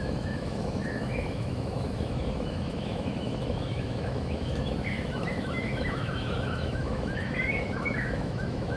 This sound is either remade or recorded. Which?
remade